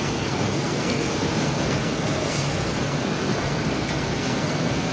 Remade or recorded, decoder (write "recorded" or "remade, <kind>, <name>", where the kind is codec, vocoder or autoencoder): remade, codec, SNAC